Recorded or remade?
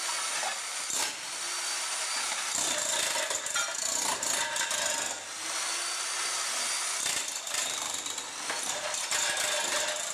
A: recorded